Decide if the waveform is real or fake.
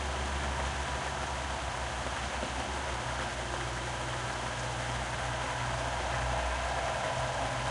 real